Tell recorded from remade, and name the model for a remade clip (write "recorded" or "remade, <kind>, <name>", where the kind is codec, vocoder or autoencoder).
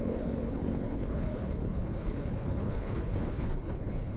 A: remade, codec, HILCodec